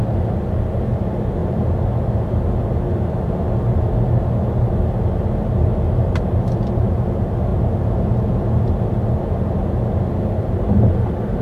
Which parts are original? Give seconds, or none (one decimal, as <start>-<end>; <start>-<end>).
0.0-11.4